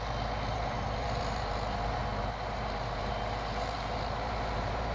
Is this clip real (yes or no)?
no